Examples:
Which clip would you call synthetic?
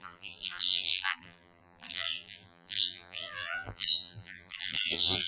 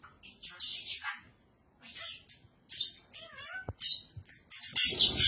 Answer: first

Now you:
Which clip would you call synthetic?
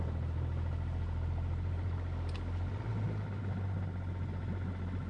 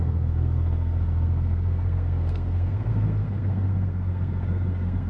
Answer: second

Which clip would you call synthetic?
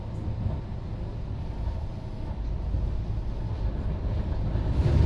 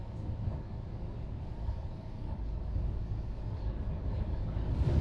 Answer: second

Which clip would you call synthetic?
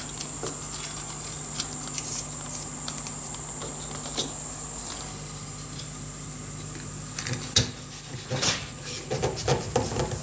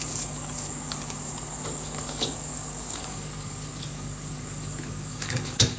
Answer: second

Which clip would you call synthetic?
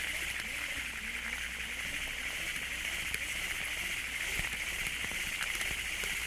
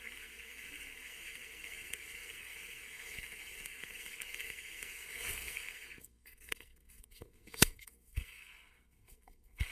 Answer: second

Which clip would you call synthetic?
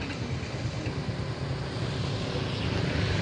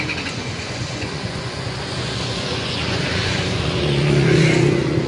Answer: second